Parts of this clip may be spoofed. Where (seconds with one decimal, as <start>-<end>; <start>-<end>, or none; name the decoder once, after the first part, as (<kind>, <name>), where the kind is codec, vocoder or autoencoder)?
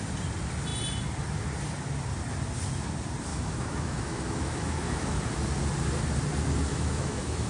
3.3-5.2 (autoencoder, DAC-VAE); 6.7-7.5